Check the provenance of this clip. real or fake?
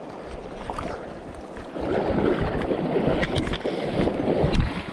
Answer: real